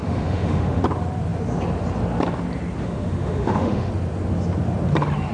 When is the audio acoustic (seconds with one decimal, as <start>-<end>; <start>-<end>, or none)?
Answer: 0.8-2.8; 3.9-5.3